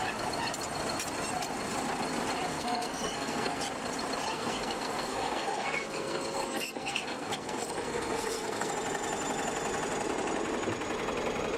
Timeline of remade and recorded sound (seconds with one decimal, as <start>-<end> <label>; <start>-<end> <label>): 0.0-2.5 recorded; 2.5-3.6 remade; 3.6-4.3 recorded; 4.3-8.7 remade; 8.7-11.6 recorded